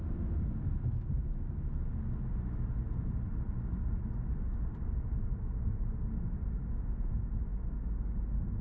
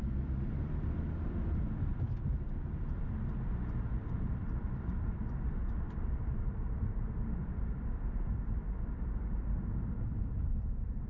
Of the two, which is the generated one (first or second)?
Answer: second